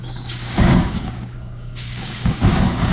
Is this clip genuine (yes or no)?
no